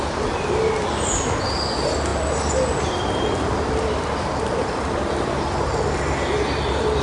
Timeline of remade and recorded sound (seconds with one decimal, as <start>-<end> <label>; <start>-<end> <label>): 0.0-7.0 recorded